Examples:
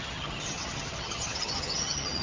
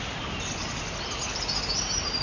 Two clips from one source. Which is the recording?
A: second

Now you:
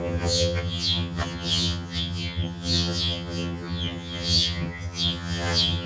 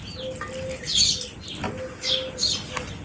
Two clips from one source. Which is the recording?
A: second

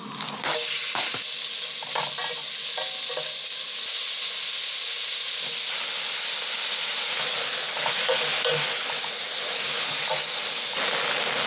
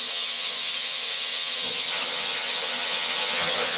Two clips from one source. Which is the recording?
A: first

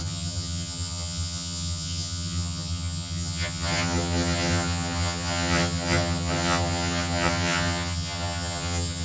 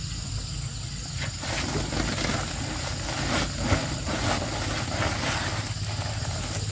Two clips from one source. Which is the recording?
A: second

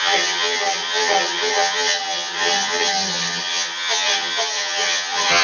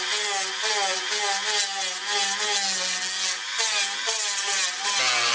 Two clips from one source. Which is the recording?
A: second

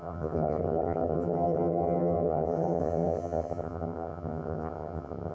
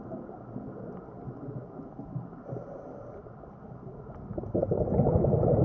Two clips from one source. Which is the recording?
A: second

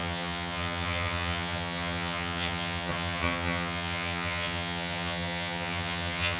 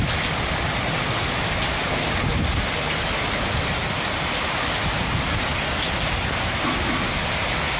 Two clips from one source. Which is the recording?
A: second